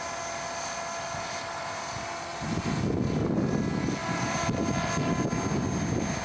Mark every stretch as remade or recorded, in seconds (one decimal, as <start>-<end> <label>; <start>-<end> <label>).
0.0-4.0 recorded; 4.0-4.6 remade; 4.6-6.2 recorded